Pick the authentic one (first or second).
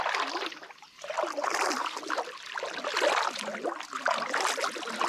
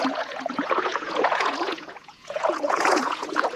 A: first